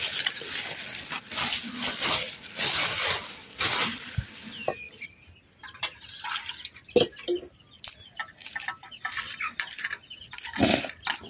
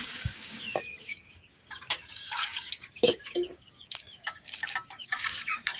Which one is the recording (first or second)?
first